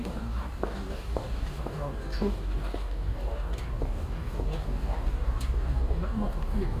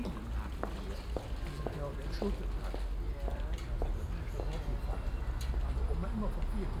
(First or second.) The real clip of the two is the second